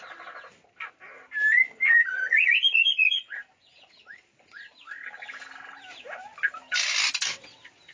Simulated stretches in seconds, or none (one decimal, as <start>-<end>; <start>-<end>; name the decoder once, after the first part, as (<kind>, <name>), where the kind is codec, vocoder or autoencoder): 1.5-3.9 (vocoder, Vocos)

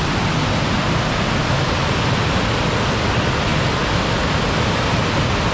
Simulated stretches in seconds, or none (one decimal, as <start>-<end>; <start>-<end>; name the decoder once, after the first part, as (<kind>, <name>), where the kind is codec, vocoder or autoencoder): none